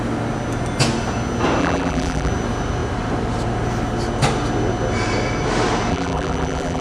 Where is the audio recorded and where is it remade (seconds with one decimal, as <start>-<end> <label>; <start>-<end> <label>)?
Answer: 0.0-1.6 recorded; 1.6-2.3 remade; 2.3-5.9 recorded; 5.9-6.8 remade